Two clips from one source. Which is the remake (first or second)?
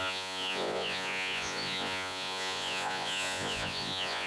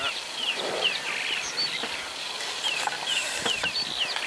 first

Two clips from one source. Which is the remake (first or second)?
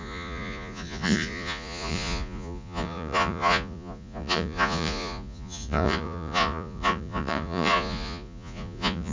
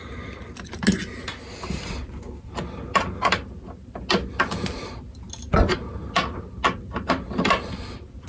first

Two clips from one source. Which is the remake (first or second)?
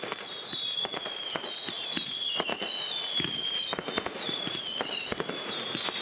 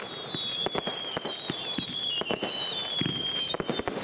first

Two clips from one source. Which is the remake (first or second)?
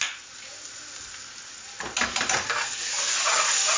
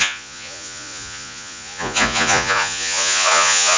second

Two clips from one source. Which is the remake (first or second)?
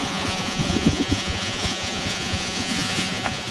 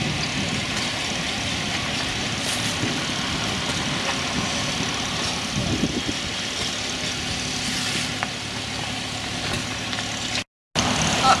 first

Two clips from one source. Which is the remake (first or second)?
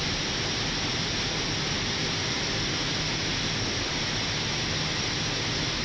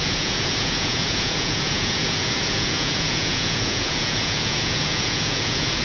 second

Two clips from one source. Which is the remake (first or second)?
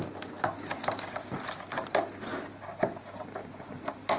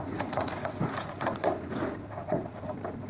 second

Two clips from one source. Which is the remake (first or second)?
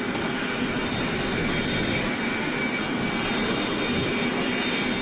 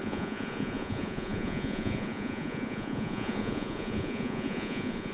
second